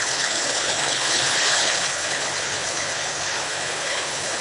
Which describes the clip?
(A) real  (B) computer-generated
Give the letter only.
B